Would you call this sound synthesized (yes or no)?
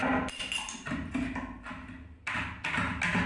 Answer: no